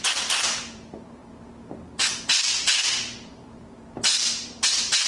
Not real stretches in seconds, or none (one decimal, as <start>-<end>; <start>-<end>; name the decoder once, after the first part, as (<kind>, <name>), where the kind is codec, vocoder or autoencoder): 0.0-5.1 (vocoder, BigVGAN v2)